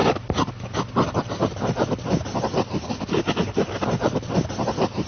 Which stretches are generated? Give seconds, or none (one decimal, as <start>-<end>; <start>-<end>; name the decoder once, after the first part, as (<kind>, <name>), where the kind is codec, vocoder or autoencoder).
none